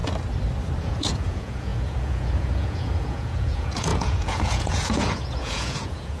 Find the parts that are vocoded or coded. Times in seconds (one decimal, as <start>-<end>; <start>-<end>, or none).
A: 0.8-6.2